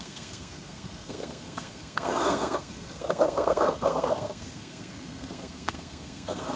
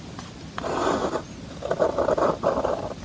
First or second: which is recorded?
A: second